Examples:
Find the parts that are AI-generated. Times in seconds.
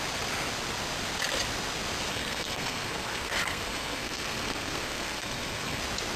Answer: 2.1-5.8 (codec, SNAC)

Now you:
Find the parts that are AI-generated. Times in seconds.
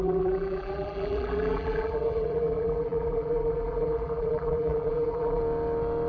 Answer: 0.0-5.4 (vocoder, BigVGAN v2)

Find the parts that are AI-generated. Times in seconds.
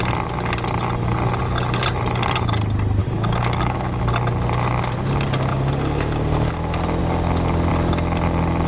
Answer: 3.0-4.0 (codec, DAC); 5.5-6.5